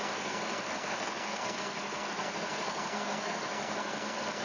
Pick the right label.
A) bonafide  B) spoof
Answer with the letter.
B